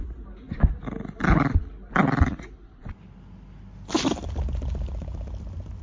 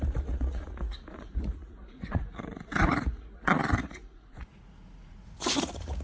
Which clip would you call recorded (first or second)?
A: first